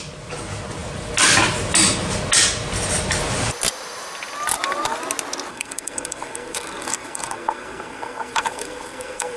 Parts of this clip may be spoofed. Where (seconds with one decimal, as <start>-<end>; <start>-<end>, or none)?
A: 5.5-9.4